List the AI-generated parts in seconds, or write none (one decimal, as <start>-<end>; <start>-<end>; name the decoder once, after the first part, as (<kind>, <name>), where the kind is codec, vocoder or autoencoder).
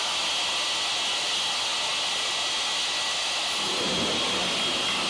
none